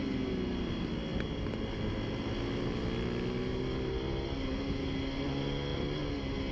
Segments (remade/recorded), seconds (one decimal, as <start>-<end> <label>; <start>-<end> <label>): 0.0-6.5 recorded